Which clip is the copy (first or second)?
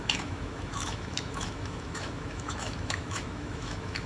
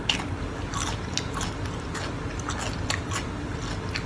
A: first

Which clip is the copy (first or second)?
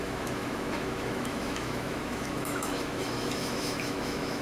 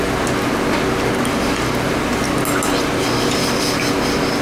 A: first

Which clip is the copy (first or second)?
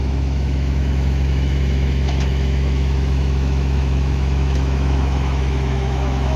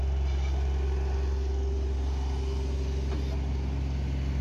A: first